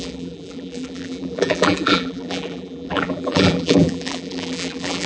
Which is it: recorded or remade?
remade